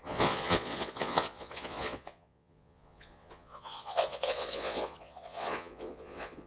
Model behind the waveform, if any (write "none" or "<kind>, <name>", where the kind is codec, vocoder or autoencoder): vocoder, Vocos